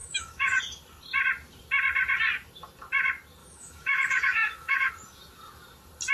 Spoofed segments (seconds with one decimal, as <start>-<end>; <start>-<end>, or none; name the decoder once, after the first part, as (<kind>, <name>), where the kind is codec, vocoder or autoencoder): 0.0-0.6 (autoencoder, DAC-VAE); 3.4-4.9